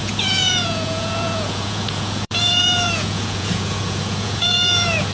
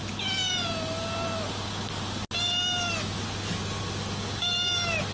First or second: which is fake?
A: first